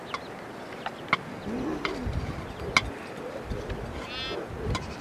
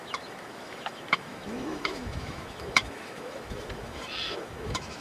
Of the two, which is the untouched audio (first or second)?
first